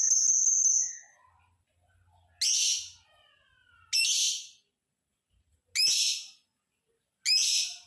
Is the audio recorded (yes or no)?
yes